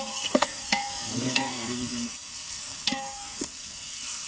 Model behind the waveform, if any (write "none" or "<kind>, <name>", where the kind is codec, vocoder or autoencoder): codec, SNAC